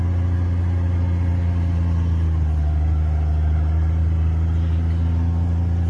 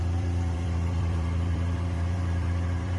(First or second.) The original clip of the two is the first